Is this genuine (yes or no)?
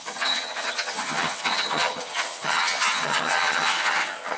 no